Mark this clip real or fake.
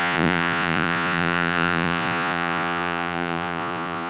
fake